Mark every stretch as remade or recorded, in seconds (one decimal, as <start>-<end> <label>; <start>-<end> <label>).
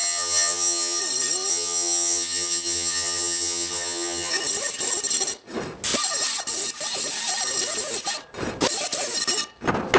0.0-1.0 remade; 1.0-1.5 recorded; 1.5-4.3 remade; 4.3-10.0 recorded